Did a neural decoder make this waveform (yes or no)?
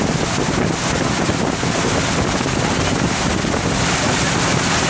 no